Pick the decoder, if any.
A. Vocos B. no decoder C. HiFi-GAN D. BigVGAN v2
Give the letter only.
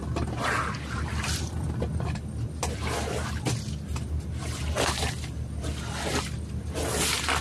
B